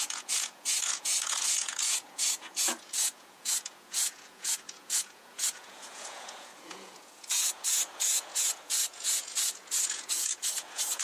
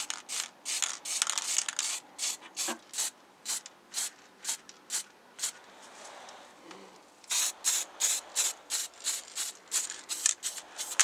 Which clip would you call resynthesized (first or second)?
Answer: first